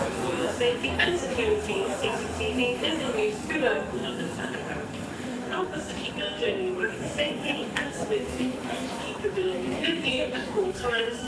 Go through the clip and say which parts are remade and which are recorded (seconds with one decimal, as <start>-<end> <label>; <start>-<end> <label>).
0.0-11.3 remade